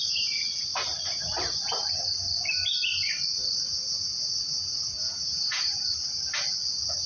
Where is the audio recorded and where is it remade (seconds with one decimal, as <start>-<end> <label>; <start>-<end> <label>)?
0.0-3.7 recorded; 3.7-5.9 remade; 5.9-7.1 recorded